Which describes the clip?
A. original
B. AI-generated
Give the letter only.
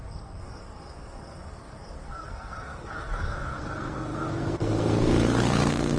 B